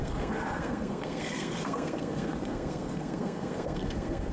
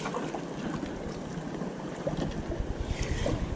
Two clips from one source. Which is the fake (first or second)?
first